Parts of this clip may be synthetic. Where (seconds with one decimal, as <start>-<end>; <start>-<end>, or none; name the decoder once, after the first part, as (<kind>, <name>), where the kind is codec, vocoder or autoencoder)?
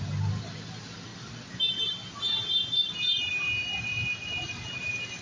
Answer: none